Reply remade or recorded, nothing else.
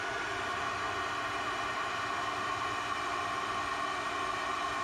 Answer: recorded